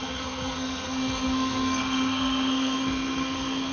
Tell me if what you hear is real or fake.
fake